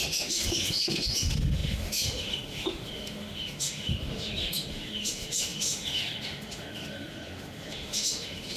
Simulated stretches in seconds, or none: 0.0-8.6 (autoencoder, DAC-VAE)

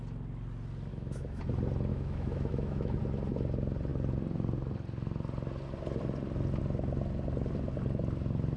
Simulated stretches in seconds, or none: 0.9-1.4 (autoencoder, DAC-VAE); 1.9-3.0

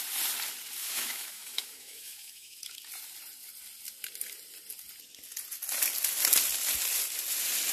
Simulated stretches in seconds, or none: 0.8-2.6 (autoencoder, DAC-VAE)

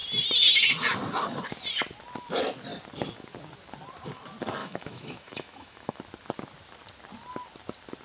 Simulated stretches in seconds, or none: 4.6-6.0 (autoencoder, DAC-VAE)